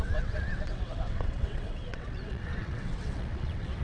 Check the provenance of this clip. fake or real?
fake